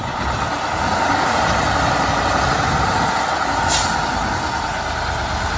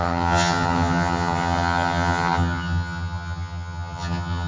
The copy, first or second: second